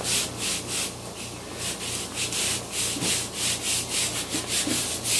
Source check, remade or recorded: recorded